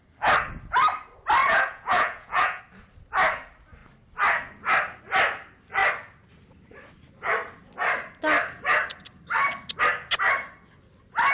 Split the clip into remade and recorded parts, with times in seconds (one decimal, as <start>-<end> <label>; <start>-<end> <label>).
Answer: 0.0-1.4 recorded; 1.4-2.6 remade; 2.6-11.3 recorded